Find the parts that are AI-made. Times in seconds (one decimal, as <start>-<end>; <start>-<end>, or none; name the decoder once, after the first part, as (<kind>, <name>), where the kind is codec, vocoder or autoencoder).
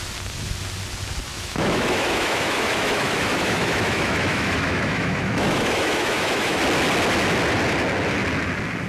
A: 1.3-6.6 (autoencoder, DAC-VAE)